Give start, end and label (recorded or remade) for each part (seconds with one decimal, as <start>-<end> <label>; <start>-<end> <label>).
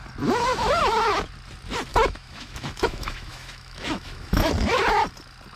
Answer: 0.0-1.9 recorded; 1.9-4.5 remade; 4.5-5.6 recorded